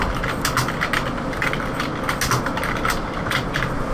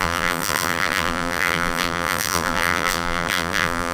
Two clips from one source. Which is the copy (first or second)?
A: second